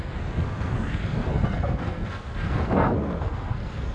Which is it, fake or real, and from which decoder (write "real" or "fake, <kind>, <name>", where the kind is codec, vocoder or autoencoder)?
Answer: fake, codec, SNAC